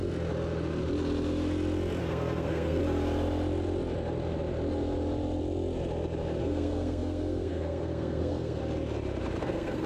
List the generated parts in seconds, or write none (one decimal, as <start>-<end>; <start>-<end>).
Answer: 2.0-2.8; 6.4-8.6; 9.4-9.9